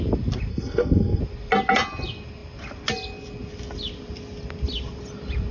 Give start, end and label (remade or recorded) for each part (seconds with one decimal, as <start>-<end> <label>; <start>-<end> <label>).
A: 0.0-0.5 recorded; 0.5-1.2 remade; 1.2-5.5 recorded

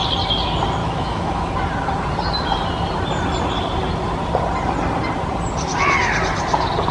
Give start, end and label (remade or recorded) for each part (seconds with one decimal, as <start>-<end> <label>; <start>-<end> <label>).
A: 0.0-0.8 recorded; 0.8-1.5 remade; 1.5-6.9 recorded